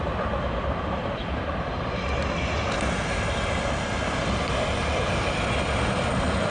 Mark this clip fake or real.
real